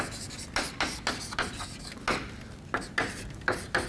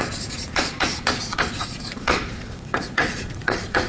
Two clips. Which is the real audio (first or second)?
first